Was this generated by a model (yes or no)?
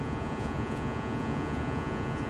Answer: yes